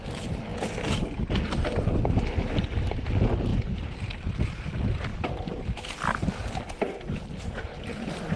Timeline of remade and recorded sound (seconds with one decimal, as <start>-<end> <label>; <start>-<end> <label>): 0.0-3.5 recorded; 3.5-4.3 remade; 4.3-5.1 recorded; 5.1-6.3 remade; 6.3-8.4 recorded